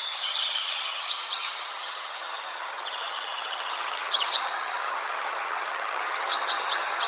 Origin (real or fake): fake